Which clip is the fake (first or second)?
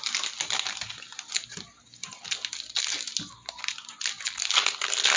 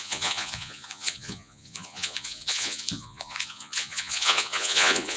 second